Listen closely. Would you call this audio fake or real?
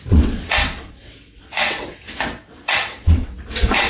fake